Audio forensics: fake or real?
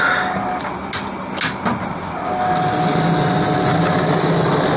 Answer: real